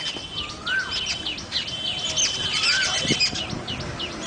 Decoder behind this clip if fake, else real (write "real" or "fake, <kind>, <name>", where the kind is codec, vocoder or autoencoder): real